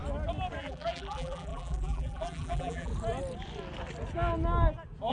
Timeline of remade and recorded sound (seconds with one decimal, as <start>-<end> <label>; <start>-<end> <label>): 0.0-0.6 recorded; 0.6-2.9 remade; 2.9-5.1 recorded